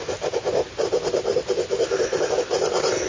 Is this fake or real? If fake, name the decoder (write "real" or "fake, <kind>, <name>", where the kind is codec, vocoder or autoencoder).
real